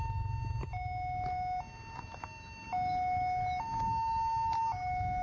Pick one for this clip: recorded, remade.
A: recorded